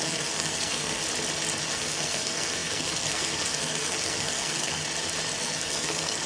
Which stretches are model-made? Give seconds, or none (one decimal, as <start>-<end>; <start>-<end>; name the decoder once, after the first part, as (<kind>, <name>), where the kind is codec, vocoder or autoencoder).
0.0-1.0 (codec, SNAC); 1.7-4.8; 5.4-6.3